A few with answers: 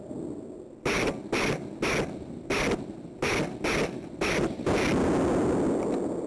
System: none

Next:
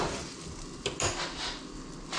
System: none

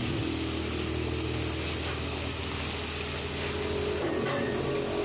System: none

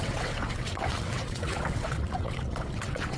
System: vocoder, WaveNeXt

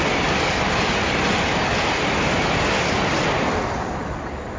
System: none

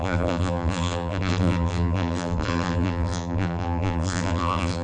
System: vocoder, BigVGAN v2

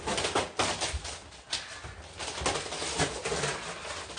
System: none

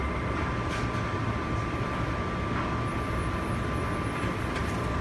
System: none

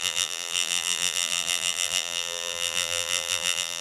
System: vocoder, BigVGAN v2